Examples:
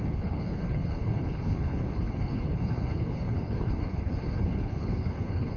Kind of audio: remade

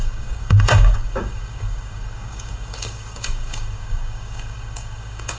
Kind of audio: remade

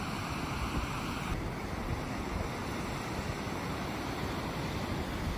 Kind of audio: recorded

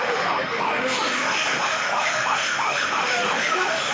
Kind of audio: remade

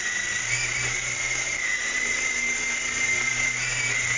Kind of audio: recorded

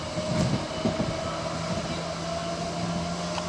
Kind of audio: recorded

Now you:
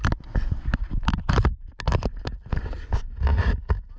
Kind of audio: recorded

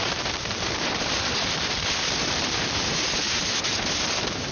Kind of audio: remade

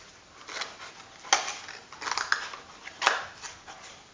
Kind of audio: recorded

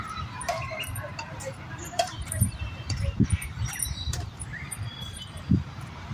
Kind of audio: remade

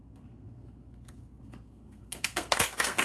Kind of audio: remade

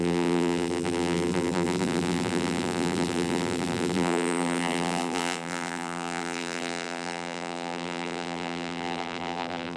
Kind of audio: remade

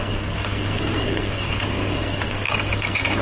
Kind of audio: remade